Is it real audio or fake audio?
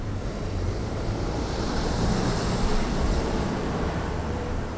fake